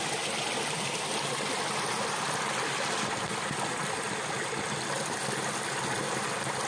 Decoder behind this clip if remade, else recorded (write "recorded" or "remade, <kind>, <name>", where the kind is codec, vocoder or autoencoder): recorded